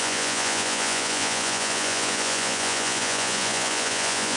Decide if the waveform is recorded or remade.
remade